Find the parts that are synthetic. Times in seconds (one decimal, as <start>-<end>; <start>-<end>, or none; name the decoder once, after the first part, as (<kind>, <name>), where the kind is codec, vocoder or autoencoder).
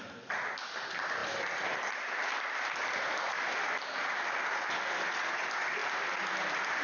none